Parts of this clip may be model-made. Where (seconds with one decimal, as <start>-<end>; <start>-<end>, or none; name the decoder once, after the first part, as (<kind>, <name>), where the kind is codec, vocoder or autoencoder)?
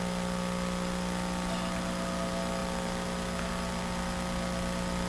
none